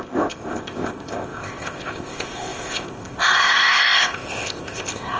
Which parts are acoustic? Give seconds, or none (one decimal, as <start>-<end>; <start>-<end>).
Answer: none